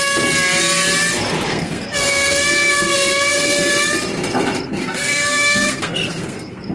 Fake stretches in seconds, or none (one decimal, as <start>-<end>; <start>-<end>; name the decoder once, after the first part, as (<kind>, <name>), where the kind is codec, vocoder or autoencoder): 1.5-3.7 (codec, SNAC); 4.8-6.7